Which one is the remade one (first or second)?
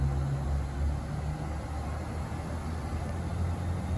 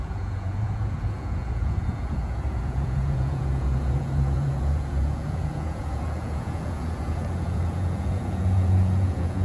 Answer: second